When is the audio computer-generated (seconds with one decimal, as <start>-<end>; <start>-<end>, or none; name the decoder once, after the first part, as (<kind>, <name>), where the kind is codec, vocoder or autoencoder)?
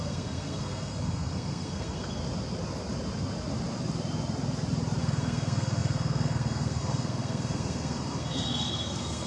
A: 0.0-2.2 (codec, SNAC); 5.0-9.3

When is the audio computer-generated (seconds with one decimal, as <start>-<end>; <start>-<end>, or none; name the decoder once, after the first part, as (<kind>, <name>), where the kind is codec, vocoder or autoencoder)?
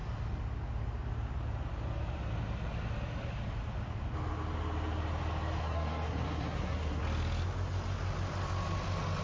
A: 5.6-7.0 (codec, SNAC)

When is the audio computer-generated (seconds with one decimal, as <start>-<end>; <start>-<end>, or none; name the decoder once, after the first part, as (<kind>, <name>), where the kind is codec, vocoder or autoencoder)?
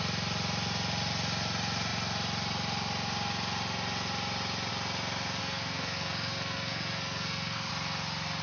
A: 5.4-7.7 (codec, SNAC)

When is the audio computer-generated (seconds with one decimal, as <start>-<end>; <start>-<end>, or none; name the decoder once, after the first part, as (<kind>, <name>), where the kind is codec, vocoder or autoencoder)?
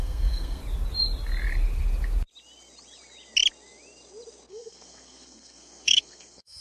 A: 0.0-0.6 (codec, SNAC); 4.5-6.6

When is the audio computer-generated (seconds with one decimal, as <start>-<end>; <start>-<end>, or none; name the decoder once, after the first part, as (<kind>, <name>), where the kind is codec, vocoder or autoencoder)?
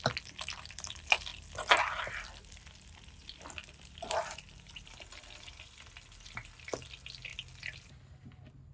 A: none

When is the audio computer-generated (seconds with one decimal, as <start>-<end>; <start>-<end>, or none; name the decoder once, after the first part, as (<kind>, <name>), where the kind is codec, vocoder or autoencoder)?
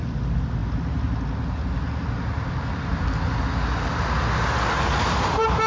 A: none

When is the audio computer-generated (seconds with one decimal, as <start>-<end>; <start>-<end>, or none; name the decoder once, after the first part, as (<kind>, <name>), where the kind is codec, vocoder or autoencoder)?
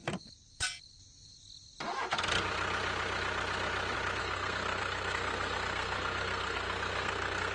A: 4.2-7.5 (codec, SNAC)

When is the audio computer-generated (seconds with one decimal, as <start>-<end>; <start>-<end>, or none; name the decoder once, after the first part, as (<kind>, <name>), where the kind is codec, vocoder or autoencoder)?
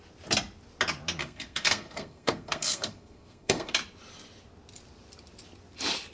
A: 1.2-3.7 (codec, SNAC)